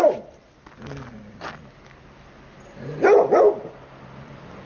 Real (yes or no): yes